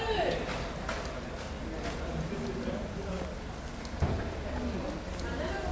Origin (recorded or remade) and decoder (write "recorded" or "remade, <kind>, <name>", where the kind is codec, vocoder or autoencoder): recorded